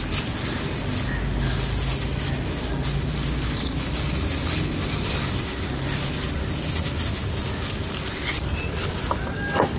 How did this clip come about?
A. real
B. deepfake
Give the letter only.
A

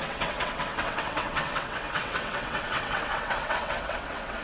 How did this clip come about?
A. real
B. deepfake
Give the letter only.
B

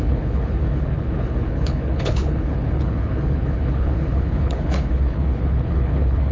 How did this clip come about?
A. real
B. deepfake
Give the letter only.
B